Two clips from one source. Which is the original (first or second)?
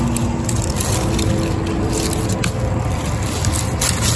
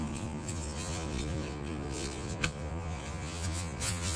first